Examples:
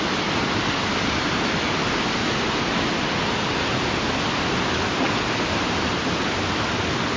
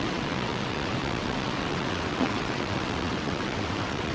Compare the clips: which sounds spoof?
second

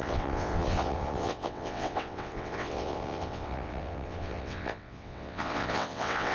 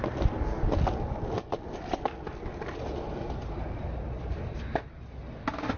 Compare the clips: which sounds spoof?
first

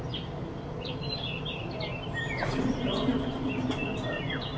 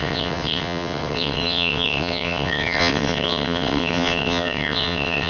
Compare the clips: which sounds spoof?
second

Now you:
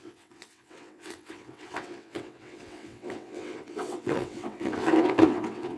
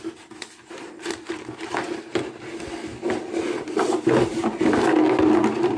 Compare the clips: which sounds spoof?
first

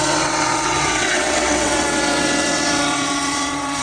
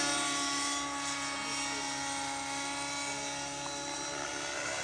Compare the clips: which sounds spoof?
first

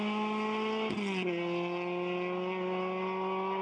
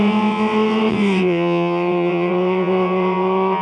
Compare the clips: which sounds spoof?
second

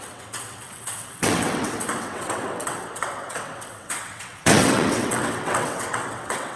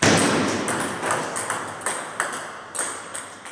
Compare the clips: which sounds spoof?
first